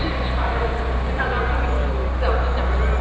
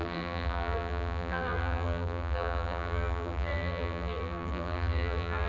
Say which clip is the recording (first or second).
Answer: first